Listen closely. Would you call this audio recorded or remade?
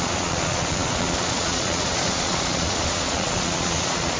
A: remade